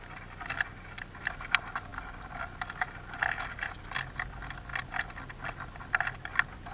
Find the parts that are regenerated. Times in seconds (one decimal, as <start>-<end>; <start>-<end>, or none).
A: none